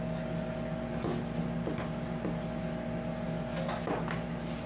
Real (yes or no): yes